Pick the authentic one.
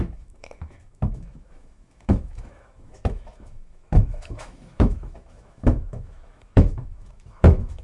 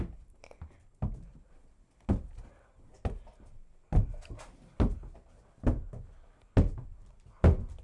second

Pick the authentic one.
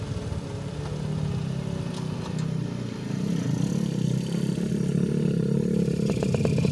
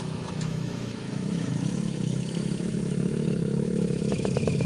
first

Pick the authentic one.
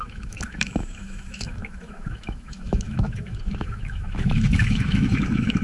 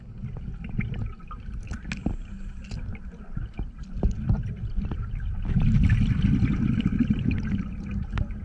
second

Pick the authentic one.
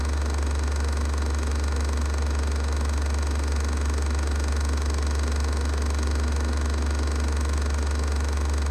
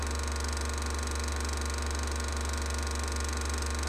second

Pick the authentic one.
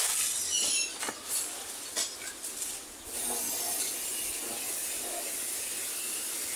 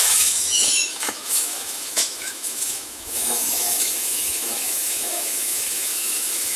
first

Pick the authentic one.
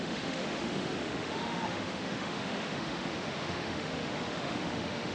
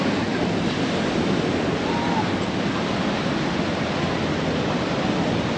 second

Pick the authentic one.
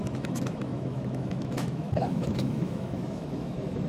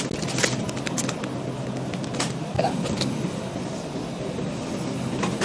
second